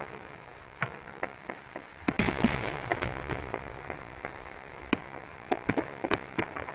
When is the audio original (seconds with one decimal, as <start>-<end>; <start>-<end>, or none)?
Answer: none

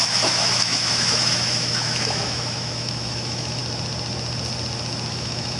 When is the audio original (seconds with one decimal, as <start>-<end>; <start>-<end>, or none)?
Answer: 3.6-5.1

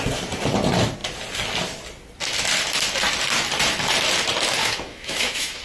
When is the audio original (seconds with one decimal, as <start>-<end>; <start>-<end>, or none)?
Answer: 0.0-4.6

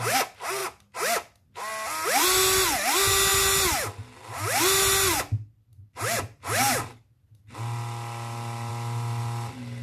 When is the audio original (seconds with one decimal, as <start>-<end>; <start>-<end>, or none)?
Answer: 0.0-9.8